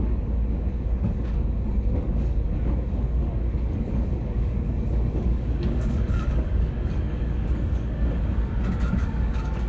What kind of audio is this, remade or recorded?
remade